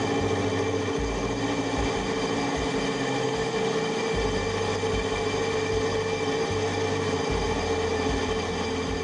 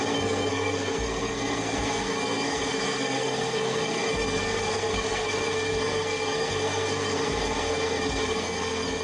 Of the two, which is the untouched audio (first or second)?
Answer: first